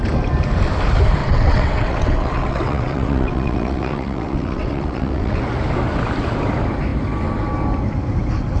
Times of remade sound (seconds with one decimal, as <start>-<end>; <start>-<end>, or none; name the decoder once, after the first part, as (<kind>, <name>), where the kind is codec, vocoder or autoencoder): 1.2-5.4 (vocoder, WaveNeXt)